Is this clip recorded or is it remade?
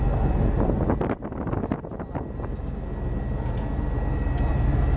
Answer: recorded